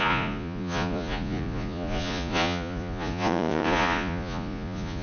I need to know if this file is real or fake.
fake